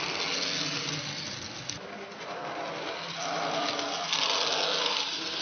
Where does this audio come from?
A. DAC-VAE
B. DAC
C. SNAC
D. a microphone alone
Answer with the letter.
D